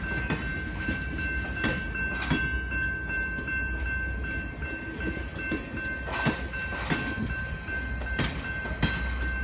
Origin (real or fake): real